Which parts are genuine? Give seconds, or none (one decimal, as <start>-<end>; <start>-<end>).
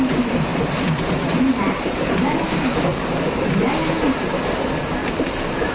0.0-0.5; 2.4-2.9; 3.5-5.0